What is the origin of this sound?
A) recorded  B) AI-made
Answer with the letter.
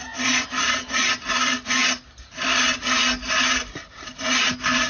A